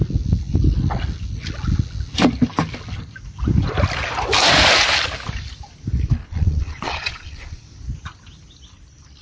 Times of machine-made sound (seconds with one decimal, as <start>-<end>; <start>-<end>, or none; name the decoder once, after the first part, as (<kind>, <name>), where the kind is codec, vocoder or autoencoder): 6.2-7.6 (vocoder, Vocos)